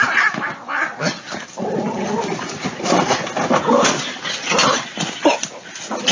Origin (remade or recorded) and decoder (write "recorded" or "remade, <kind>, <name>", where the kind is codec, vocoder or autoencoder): recorded